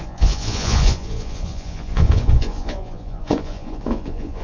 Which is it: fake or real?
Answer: fake